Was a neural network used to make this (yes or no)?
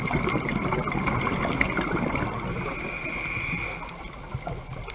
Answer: no